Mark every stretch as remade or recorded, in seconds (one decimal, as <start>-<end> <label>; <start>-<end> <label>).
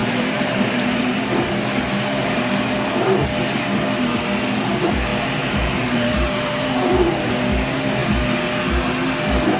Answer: 0.0-1.2 remade; 1.2-2.2 recorded; 2.2-2.9 remade; 2.9-5.1 recorded; 5.1-7.3 remade; 7.3-9.6 recorded